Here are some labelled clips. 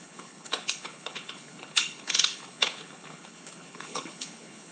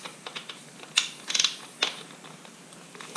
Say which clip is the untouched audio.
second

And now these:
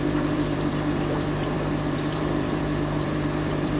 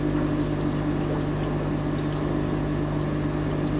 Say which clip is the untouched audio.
second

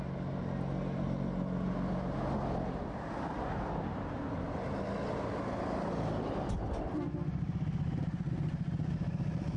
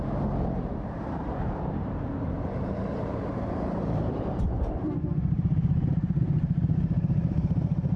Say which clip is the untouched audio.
first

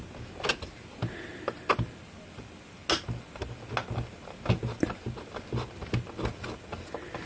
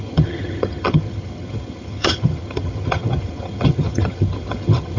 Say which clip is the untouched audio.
first